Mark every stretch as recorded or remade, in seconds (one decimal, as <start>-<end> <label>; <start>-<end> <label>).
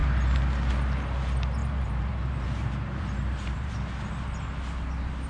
0.0-1.6 recorded; 1.6-3.7 remade; 3.7-5.3 recorded